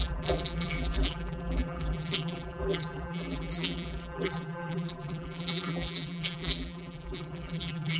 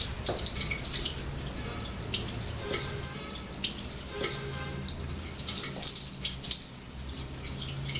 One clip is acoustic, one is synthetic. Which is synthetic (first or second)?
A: first